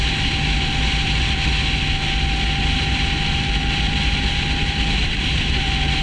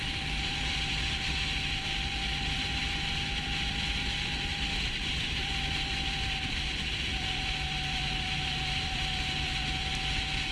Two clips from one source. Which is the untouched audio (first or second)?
first